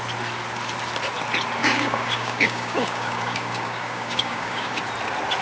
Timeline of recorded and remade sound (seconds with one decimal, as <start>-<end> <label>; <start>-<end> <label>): 0.0-1.6 recorded; 1.6-4.8 remade; 4.8-5.4 recorded